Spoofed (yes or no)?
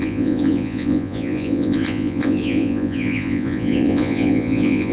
yes